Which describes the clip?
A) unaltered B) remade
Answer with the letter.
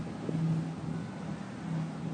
A